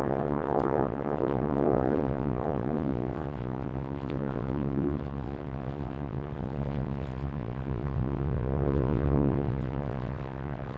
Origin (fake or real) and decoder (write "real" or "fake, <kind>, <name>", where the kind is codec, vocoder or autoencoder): fake, vocoder, WaveNeXt